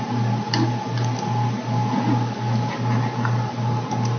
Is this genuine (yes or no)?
yes